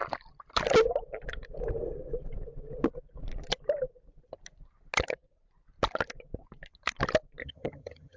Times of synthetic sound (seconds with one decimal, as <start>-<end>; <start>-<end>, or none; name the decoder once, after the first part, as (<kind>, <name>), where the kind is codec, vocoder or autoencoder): 7.4-8.2 (vocoder, HiFi-GAN)